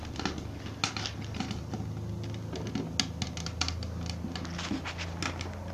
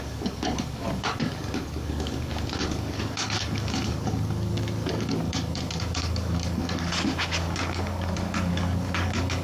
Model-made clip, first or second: second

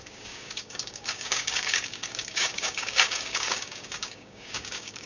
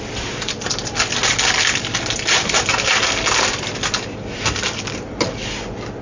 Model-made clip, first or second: first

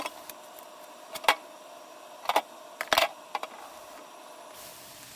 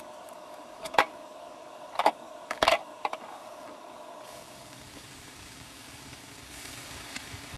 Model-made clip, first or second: second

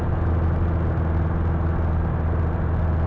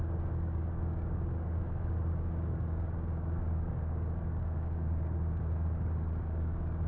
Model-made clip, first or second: second